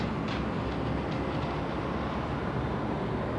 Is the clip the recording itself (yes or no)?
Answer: yes